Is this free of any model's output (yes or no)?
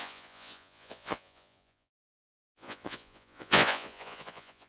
no